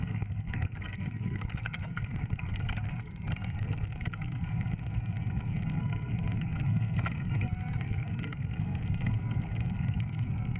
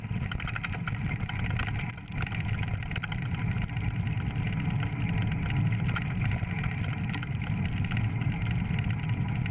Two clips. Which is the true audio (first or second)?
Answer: second